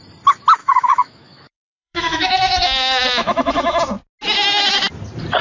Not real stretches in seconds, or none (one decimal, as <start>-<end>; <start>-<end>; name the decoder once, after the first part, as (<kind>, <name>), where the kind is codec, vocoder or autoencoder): 0.6-3.8 (autoencoder, DAC-VAE)